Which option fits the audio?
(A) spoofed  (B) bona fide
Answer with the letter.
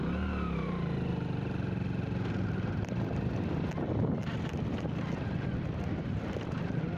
B